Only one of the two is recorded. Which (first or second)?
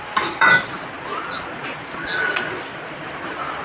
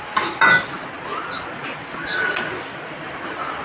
second